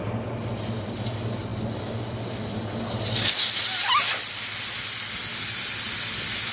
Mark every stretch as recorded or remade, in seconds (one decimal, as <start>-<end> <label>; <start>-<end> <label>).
0.0-6.5 recorded